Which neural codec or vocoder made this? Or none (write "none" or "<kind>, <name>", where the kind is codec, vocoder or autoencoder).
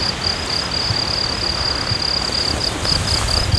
none